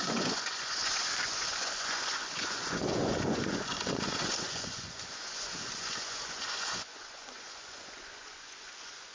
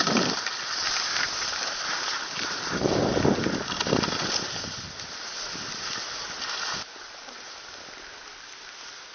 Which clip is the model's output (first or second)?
first